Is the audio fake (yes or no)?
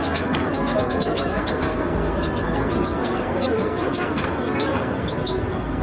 yes